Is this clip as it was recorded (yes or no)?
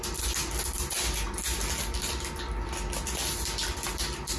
yes